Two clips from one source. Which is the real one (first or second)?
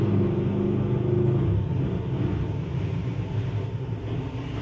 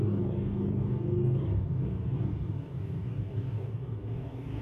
first